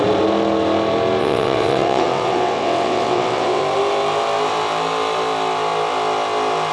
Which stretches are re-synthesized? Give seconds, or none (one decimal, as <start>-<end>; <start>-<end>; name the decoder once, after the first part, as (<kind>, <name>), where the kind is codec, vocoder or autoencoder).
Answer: 1.2-3.6 (vocoder, WaveNeXt)